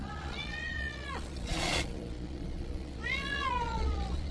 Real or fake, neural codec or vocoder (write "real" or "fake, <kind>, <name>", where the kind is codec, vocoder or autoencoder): fake, vocoder, Vocos